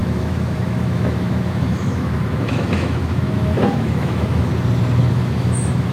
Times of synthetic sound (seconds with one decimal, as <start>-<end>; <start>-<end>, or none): 0.0-4.5; 5.1-5.9